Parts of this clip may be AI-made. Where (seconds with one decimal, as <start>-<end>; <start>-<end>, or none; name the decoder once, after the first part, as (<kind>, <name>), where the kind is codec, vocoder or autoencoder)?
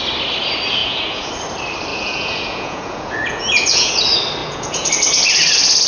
0.8-1.3 (vocoder, Vocos); 1.9-3.9; 4.4-4.9